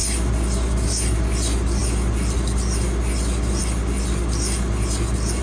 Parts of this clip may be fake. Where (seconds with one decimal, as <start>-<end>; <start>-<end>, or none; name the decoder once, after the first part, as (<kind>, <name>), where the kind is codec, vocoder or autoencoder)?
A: none